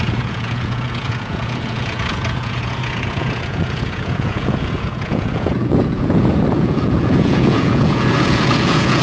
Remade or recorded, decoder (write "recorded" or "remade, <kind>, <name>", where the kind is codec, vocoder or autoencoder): remade, vocoder, Vocos